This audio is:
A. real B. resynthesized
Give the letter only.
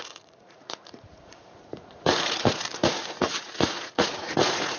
B